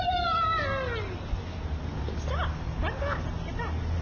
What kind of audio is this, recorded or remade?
recorded